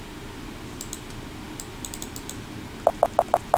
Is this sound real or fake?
real